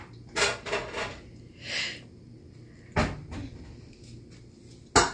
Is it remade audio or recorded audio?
recorded